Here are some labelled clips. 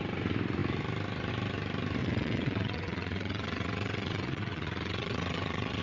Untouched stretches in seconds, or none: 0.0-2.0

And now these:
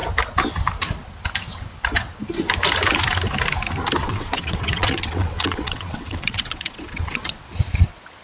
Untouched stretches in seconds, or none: 0.0-4.0; 7.5-8.2

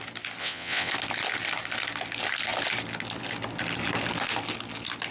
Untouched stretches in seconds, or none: 0.0-0.4; 0.9-5.1

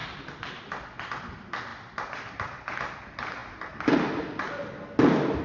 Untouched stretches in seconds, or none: 0.0-5.4

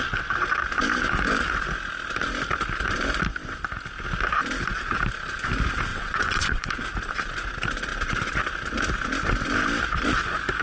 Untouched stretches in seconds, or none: 0.0-5.9; 6.7-10.6

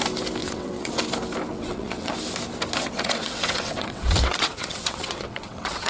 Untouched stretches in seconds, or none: 0.0-0.4; 1.0-1.5; 2.1-2.8

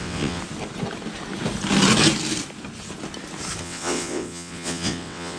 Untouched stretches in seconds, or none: 0.4-3.6